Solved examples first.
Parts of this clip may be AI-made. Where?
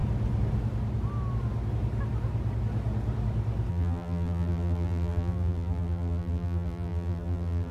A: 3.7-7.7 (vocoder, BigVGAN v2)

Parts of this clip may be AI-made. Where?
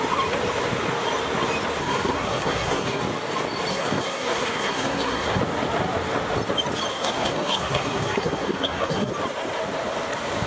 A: 1.8-3.0 (codec, SNAC); 3.7-5.4; 6.9-9.1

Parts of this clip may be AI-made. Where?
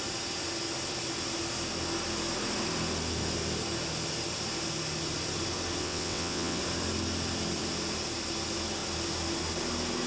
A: 5.8-6.6 (vocoder, WaveNeXt)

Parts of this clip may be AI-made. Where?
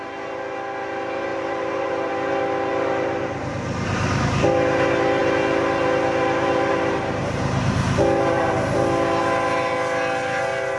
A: 1.3-2.1 (vocoder, BigVGAN v2); 7.2-7.8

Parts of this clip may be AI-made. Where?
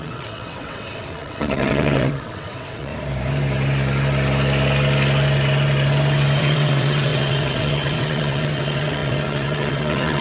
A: 0.0-2.9 (vocoder, WaveNeXt); 6.4-10.2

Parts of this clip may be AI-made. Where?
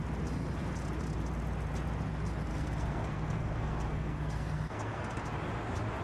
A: 2.5-5.2 (codec, SNAC)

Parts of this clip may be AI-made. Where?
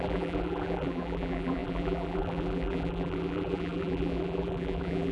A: 0.0-5.1 (vocoder, BigVGAN v2)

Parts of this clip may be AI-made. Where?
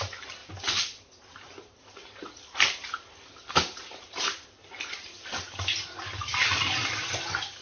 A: none